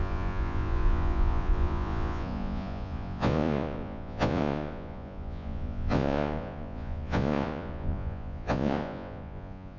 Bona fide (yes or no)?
no